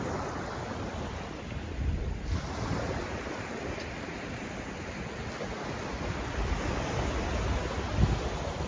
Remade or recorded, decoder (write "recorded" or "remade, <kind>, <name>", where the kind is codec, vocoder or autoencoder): recorded